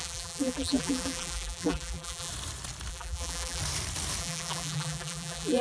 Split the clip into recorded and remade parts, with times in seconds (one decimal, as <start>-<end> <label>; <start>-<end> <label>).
0.0-2.3 remade; 2.3-2.9 recorded; 2.9-3.6 remade; 3.6-4.2 recorded; 4.2-5.6 remade